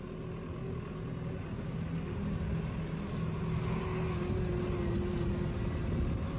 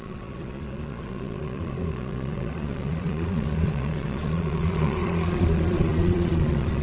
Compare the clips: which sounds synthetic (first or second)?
second